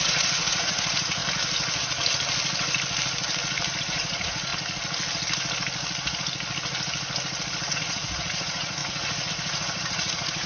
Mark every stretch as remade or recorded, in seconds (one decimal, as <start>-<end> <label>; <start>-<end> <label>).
0.0-1.2 remade; 1.2-3.8 recorded; 3.8-4.5 remade; 4.5-7.7 recorded; 7.7-10.5 remade